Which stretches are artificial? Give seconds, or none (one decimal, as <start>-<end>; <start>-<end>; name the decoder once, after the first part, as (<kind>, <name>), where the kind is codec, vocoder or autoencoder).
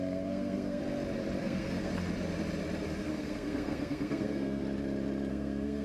0.0-0.8 (codec, SNAC); 1.4-1.9; 3.1-4.6; 5.3-5.8